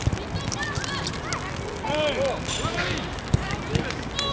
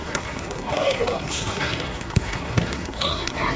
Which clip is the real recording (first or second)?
first